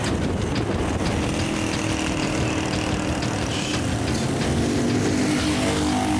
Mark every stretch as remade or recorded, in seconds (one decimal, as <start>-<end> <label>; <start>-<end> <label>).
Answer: 0.0-6.2 recorded